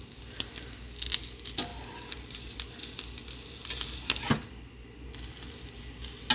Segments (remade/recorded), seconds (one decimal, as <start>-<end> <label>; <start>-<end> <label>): 0.0-6.3 recorded